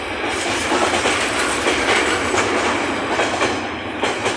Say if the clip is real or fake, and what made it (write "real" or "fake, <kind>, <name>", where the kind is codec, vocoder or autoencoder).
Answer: real